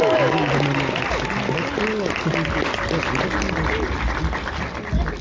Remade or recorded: recorded